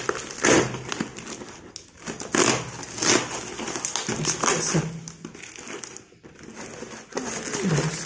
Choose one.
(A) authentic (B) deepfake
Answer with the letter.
A